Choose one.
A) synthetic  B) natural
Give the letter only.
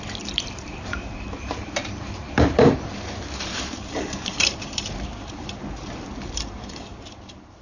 A